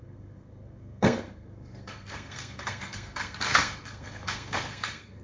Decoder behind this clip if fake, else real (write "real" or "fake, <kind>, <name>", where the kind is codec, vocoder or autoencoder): fake, codec, SNAC